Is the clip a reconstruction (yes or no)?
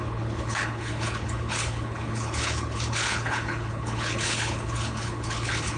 yes